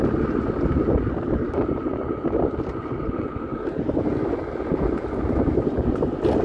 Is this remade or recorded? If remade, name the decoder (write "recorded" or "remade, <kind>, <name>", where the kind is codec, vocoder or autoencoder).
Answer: recorded